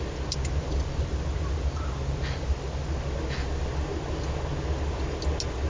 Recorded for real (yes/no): yes